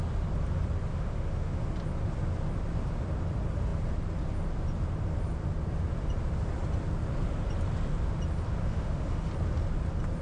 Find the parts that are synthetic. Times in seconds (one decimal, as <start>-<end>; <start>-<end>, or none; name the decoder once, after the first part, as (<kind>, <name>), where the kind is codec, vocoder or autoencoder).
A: 0.9-1.6 (autoencoder, DAC-VAE); 8.6-9.3